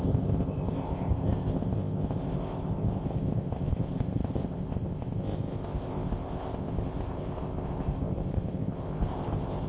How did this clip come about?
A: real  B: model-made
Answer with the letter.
B